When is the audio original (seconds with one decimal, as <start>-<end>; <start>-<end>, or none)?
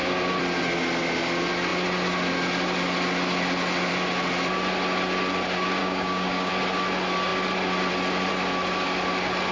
0.0-5.8; 6.5-9.5